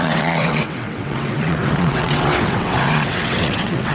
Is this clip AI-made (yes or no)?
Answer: yes